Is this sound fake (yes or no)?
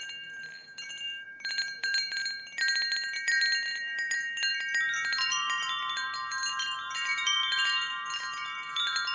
yes